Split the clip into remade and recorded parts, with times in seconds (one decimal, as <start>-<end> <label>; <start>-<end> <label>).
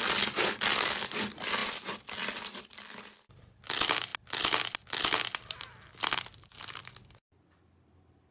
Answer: 0.0-8.3 recorded